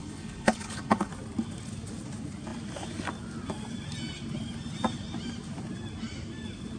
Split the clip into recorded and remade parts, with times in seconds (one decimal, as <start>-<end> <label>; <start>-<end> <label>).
0.0-1.1 remade; 1.1-6.8 recorded